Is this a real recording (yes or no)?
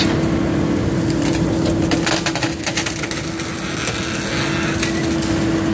yes